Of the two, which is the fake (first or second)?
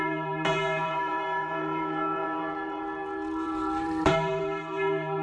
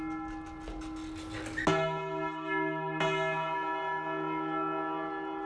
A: first